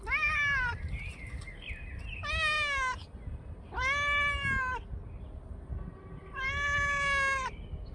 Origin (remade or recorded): recorded